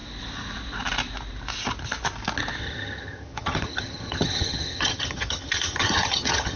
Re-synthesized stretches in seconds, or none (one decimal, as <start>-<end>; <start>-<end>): 2.6-6.6